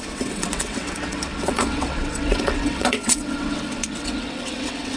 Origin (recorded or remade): remade